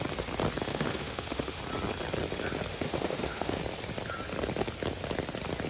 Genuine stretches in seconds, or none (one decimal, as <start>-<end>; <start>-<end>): 0.0-0.7; 1.6-2.7; 3.6-5.7